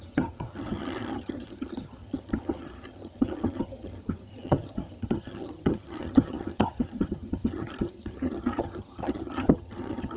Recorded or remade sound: remade